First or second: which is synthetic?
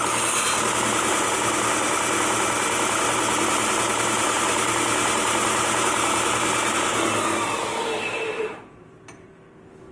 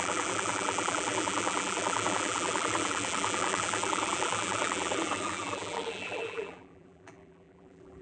second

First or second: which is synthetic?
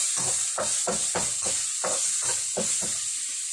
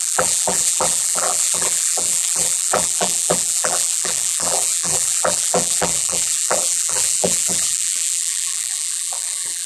second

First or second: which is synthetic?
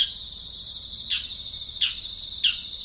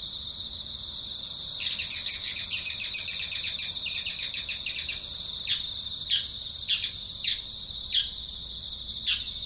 first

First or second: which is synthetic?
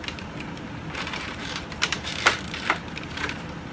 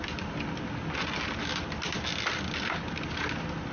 first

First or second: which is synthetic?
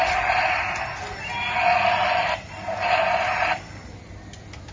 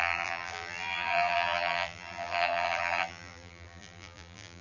second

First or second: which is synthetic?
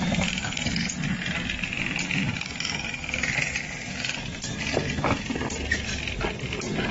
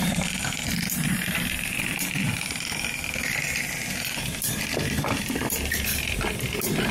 second